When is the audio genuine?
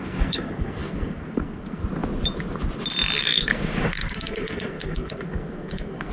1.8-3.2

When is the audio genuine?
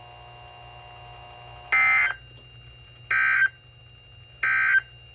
0.0-5.1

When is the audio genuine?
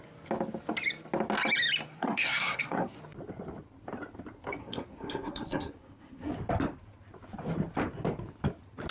0.0-1.9; 3.0-4.6; 6.3-8.9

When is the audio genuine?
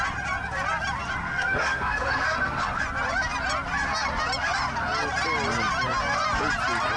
0.0-1.2; 2.8-7.0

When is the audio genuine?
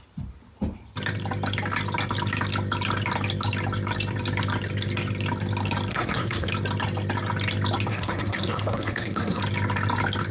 0.0-5.9; 6.5-7.9; 9.4-10.3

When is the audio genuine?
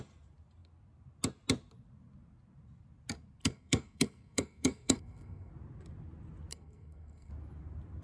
0.0-3.4; 5.5-6.5; 7.3-8.0